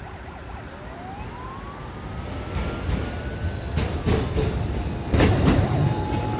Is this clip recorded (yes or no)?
yes